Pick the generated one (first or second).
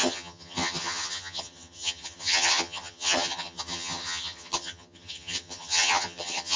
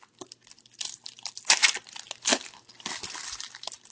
first